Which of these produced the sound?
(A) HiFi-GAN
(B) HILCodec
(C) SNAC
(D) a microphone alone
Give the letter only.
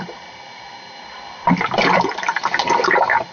D